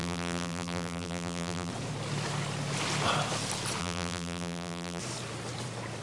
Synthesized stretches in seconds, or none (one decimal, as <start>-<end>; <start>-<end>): 0.0-1.7; 3.8-5.0